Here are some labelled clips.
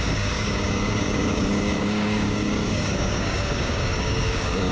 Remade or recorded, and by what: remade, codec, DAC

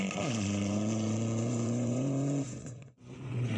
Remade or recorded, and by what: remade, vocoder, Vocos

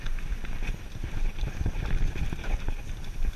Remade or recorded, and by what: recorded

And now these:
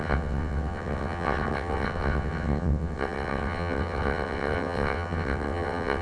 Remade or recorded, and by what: remade, vocoder, WaveNeXt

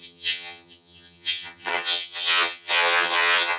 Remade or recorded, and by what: remade, vocoder, HiFi-GAN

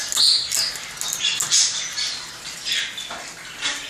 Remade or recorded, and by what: recorded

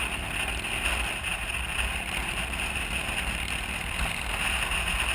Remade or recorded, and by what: recorded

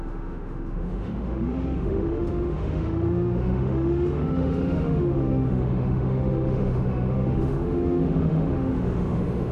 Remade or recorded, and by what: remade, autoencoder, DAC-VAE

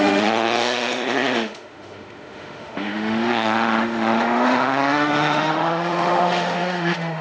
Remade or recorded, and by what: remade, autoencoder, DAC-VAE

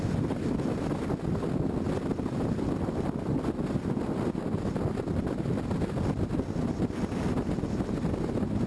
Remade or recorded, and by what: recorded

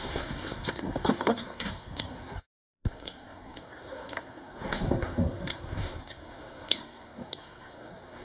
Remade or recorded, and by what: remade, codec, SNAC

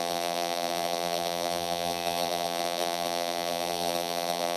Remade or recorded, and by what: remade, vocoder, BigVGAN v2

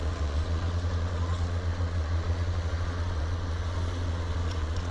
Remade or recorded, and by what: remade, vocoder, Vocos